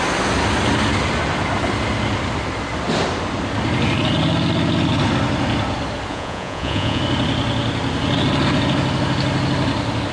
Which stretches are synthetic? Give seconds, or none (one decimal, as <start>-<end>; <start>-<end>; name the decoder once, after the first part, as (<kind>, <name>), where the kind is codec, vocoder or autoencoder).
6.1-7.0 (vocoder, Vocos)